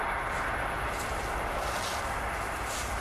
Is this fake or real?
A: real